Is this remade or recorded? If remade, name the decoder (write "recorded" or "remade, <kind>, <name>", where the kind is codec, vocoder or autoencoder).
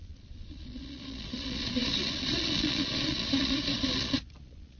remade, vocoder, Vocos